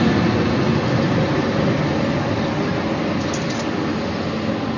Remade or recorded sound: recorded